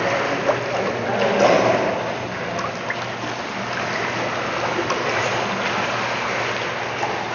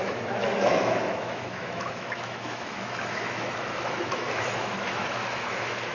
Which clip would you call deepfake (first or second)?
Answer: second